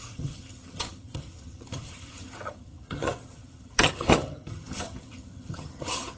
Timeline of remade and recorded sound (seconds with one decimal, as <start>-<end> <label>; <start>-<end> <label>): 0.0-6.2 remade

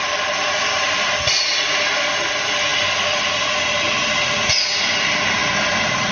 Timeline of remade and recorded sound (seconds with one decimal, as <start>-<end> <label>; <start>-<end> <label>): 0.0-6.1 recorded

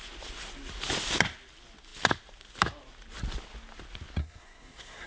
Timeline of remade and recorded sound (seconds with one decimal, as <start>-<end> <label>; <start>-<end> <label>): 0.0-4.2 recorded; 4.2-5.1 remade